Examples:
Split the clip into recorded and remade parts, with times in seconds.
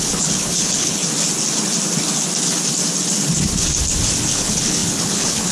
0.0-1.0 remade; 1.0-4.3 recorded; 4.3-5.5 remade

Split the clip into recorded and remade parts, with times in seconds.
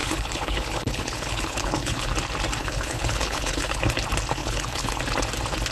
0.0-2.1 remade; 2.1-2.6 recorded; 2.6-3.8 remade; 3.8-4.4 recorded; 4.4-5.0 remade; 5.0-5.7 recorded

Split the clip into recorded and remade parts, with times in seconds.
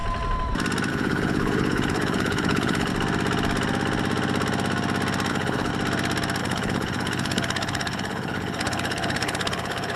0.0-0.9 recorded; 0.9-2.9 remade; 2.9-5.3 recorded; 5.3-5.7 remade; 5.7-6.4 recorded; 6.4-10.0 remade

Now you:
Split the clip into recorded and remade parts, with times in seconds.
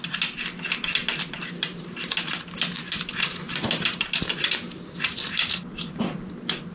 0.0-6.7 recorded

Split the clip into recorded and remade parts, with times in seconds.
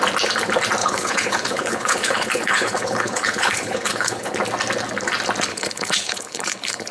0.0-0.8 recorded; 0.8-4.3 remade; 4.3-5.5 recorded; 5.5-6.9 remade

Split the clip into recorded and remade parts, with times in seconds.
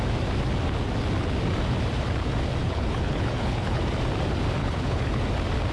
0.0-2.6 recorded; 2.6-3.8 remade; 3.8-4.6 recorded; 4.6-5.2 remade; 5.2-5.7 recorded